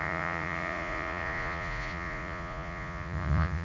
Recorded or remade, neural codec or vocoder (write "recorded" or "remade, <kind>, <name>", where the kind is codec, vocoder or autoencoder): remade, vocoder, Vocos